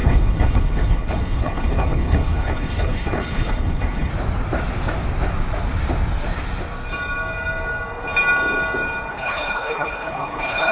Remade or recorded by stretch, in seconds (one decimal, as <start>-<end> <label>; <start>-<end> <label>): 0.0-4.1 remade; 4.1-9.1 recorded; 9.1-10.7 remade